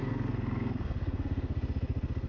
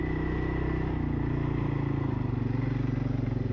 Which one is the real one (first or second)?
second